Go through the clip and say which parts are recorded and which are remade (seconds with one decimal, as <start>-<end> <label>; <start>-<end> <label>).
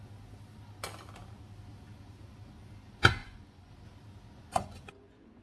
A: 0.0-3.2 recorded; 3.2-3.7 remade; 3.7-4.5 recorded; 4.5-5.4 remade